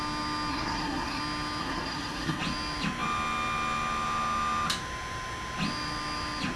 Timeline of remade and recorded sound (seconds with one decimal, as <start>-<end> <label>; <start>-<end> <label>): 0.0-0.5 recorded; 0.5-1.2 remade; 1.2-1.6 recorded; 1.6-2.4 remade; 2.4-6.6 recorded